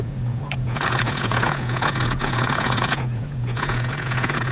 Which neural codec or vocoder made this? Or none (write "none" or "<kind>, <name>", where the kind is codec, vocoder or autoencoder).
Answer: vocoder, Vocos